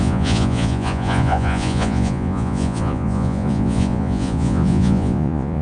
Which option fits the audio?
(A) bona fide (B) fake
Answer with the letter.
B